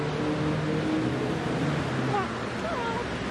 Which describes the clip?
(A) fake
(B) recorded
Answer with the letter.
B